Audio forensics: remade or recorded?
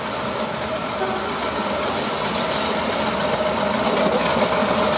recorded